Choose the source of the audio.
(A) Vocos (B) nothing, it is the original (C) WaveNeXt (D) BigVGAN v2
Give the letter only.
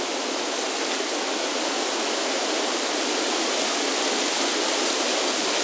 B